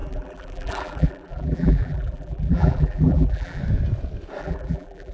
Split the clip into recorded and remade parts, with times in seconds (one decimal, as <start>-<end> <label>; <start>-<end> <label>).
0.0-3.6 remade; 3.6-4.4 recorded; 4.4-5.1 remade